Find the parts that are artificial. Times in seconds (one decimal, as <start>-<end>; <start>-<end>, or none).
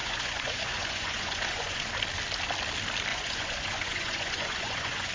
0.0-1.9; 3.1-5.1